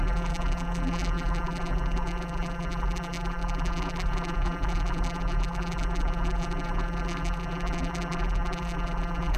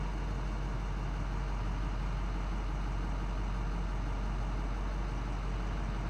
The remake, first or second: first